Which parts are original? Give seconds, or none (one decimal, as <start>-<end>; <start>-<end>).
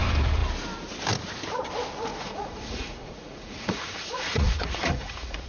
0.0-2.1